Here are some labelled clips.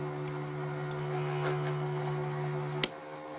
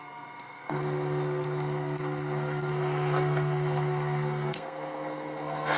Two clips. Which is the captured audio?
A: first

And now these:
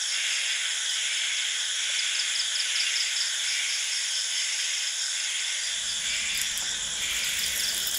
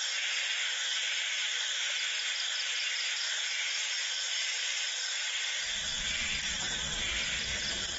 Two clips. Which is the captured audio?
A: first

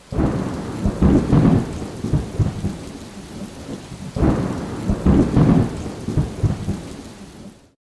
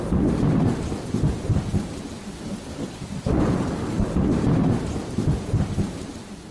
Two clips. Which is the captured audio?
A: first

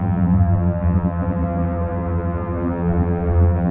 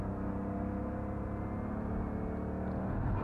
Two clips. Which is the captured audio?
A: second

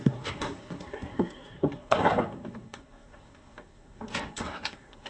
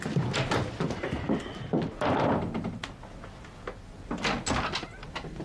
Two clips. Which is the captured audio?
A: second